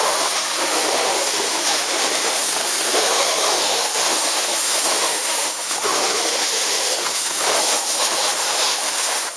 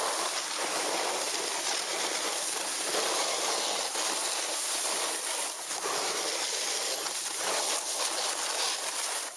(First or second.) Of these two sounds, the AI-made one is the first